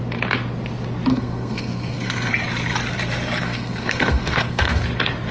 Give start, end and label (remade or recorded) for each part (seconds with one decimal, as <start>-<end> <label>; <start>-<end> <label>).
0.0-1.1 recorded; 1.1-2.3 remade; 2.3-3.4 recorded; 3.4-4.8 remade; 4.8-5.3 recorded